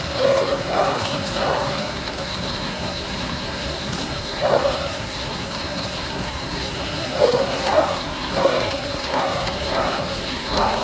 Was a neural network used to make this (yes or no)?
yes